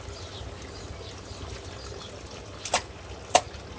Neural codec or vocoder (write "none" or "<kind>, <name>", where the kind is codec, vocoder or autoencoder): none